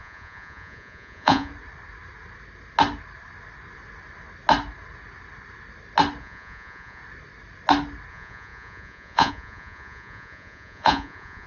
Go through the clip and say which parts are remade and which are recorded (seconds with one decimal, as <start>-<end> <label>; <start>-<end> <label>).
0.0-1.5 remade; 1.5-6.2 recorded; 6.2-7.0 remade; 7.0-8.1 recorded; 8.1-11.5 remade